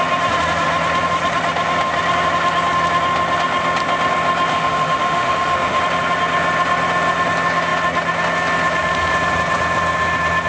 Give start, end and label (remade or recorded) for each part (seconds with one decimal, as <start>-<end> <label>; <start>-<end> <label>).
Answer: 0.0-4.5 recorded; 4.5-5.8 remade; 5.8-10.5 recorded